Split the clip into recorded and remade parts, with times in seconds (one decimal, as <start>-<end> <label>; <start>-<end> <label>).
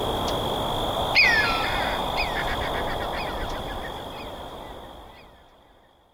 0.0-6.1 recorded